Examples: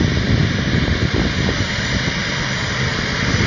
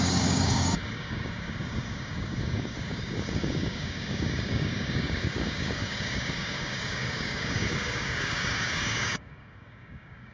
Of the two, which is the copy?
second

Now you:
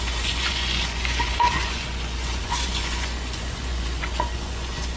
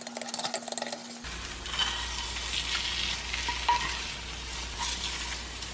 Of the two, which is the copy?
first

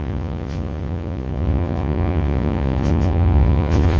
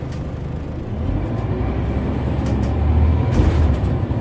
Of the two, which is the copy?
first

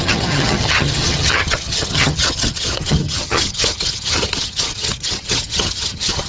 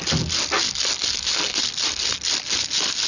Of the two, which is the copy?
first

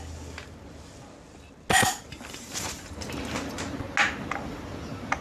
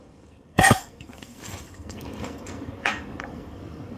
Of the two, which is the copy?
second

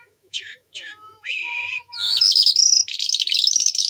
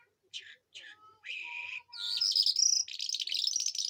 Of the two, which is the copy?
first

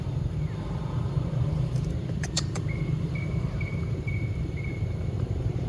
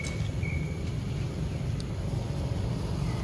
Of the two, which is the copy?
first